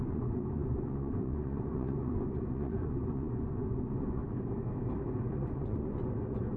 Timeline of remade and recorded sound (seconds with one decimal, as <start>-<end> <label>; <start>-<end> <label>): 0.0-4.2 remade; 4.2-5.3 recorded; 5.3-6.6 remade